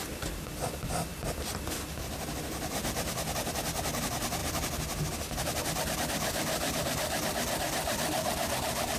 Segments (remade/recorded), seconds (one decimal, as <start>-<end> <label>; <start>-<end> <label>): 0.0-1.1 remade; 1.1-4.0 recorded; 4.0-4.4 remade; 4.4-5.4 recorded; 5.4-9.0 remade